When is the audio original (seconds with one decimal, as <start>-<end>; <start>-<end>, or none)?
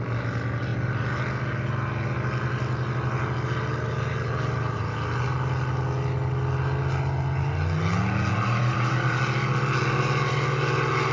0.0-8.6; 9.2-11.1